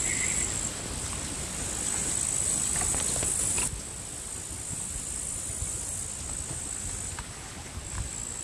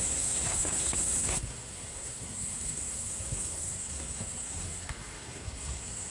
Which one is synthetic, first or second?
second